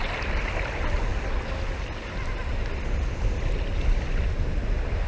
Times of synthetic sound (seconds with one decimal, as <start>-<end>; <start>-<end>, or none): none